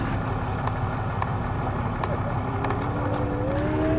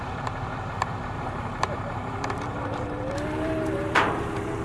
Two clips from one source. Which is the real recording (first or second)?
first